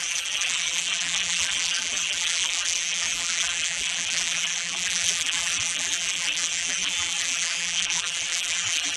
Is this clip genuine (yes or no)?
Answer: no